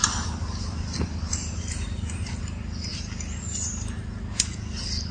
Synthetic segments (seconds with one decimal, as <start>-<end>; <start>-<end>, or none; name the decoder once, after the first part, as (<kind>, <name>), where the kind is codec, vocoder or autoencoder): none